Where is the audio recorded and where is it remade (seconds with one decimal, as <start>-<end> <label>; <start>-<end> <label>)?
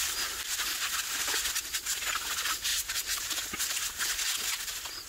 0.0-2.7 recorded; 2.7-3.8 remade; 3.8-5.1 recorded